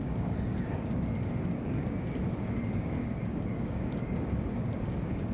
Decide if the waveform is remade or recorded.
remade